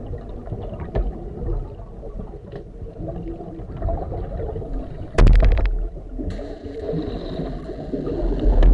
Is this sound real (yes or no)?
yes